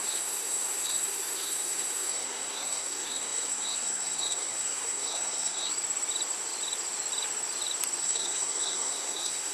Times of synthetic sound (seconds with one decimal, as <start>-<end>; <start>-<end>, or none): 0.0-5.7; 8.0-9.5